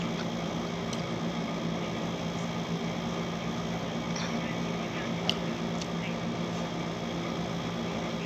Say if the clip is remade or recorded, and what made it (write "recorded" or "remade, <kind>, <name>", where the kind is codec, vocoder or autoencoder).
recorded